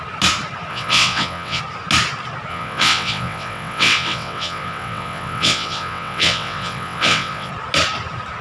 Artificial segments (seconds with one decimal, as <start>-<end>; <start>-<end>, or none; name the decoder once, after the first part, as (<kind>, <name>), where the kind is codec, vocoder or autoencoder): 0.7-1.6 (vocoder, WaveNeXt); 2.5-7.5